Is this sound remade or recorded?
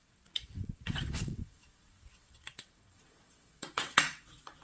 remade